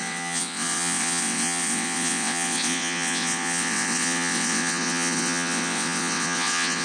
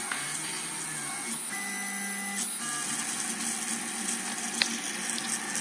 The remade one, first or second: first